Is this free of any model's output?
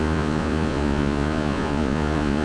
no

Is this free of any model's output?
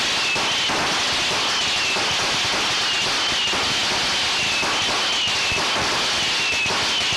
yes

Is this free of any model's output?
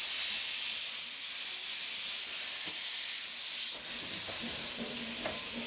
yes